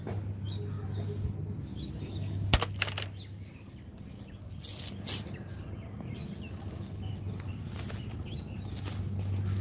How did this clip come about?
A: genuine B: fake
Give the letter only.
A